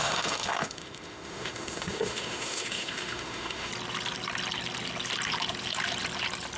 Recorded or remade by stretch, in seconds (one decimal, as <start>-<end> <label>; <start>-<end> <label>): 0.0-3.7 remade; 3.7-6.6 recorded